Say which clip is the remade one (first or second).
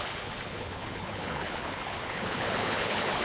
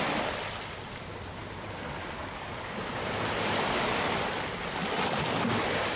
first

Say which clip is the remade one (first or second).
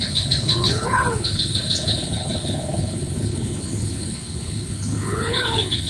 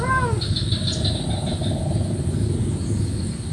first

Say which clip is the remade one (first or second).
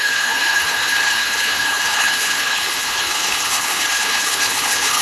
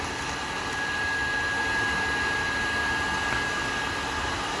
first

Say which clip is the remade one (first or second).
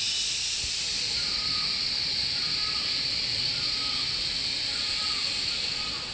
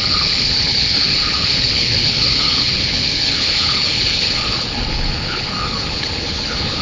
second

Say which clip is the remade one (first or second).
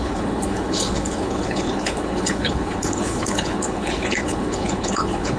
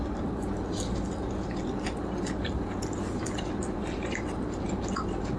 first